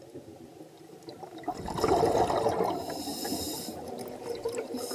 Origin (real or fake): real